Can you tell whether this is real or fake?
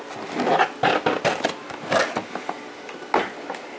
real